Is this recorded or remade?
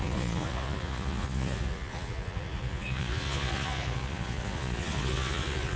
remade